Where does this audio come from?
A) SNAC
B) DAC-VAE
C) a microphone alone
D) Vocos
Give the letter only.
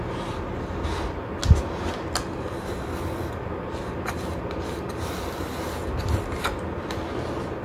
C